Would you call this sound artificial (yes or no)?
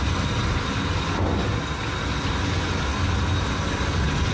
no